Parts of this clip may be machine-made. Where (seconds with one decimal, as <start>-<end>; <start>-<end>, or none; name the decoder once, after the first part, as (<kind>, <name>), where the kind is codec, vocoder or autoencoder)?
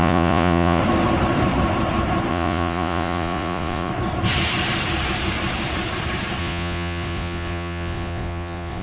0.0-0.8 (vocoder, Vocos); 2.3-3.9; 6.4-8.8